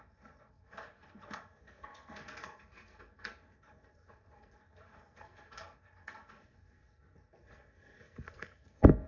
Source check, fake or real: fake